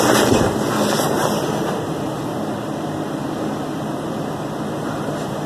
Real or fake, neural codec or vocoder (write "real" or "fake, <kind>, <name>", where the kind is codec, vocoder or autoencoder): fake, vocoder, BigVGAN v2